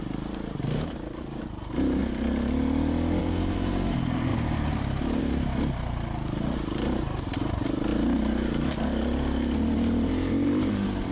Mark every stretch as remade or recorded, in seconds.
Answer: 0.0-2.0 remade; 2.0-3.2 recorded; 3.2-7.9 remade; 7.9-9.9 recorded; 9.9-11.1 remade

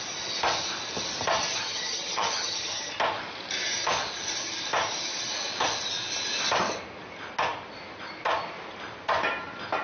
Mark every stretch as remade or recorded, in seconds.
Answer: 0.0-1.5 recorded; 1.5-2.9 remade; 2.9-9.8 recorded

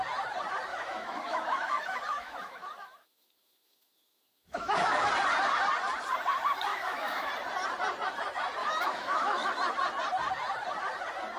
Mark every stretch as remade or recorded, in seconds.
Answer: 0.0-0.7 recorded; 0.7-5.1 remade; 5.1-6.7 recorded; 6.7-7.3 remade; 7.3-8.6 recorded; 8.6-9.5 remade; 9.5-11.4 recorded

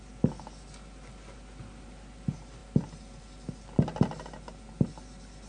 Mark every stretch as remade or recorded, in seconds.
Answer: 0.0-5.5 recorded

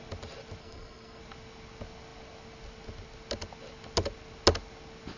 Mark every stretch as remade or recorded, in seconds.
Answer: 0.0-0.6 recorded; 0.6-1.2 remade; 1.2-5.2 recorded

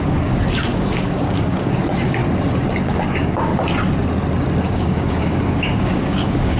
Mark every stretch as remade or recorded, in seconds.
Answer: 0.0-2.2 remade; 2.2-2.8 recorded; 2.8-3.5 remade; 3.5-4.6 recorded; 4.6-6.6 remade

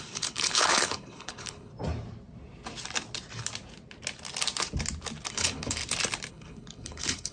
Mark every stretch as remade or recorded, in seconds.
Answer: 0.0-1.7 remade; 1.7-5.3 recorded; 5.3-5.8 remade; 5.8-6.3 recorded; 6.3-7.3 remade

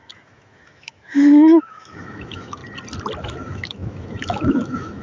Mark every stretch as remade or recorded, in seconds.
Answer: 0.0-2.6 remade; 2.6-3.2 recorded; 3.2-5.0 remade